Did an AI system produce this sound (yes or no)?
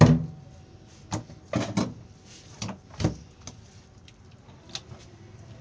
no